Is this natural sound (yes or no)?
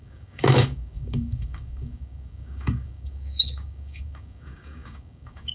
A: no